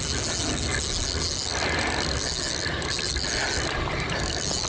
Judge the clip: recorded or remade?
recorded